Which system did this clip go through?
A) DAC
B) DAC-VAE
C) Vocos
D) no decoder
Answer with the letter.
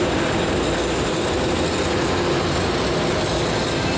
D